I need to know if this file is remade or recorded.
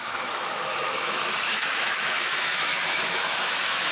remade